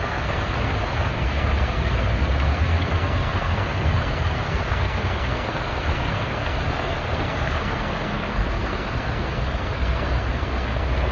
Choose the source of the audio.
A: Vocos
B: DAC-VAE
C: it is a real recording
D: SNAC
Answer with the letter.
D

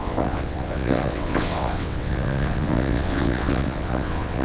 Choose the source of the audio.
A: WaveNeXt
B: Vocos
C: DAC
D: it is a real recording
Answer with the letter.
A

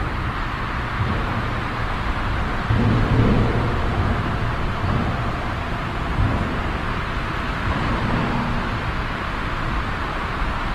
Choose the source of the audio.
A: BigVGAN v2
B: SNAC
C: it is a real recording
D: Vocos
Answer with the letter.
C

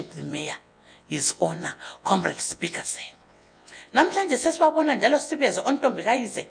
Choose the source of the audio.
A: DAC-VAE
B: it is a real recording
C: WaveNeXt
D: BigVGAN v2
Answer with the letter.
C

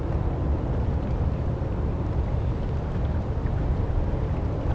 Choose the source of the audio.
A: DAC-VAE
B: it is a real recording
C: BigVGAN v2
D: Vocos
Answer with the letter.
B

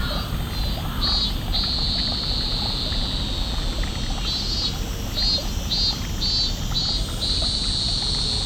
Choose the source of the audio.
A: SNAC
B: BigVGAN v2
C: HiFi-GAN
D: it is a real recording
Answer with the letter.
D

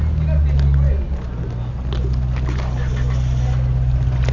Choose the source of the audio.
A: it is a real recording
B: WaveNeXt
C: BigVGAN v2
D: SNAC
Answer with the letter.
A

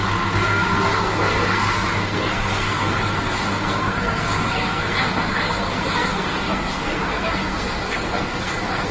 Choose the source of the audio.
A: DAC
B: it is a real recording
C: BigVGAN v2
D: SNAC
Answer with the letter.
D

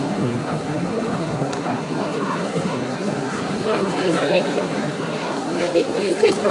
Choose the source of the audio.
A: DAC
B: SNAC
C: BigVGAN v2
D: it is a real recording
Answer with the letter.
B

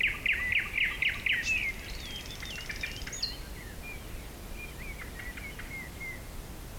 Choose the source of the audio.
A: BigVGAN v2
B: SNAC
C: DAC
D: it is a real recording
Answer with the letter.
D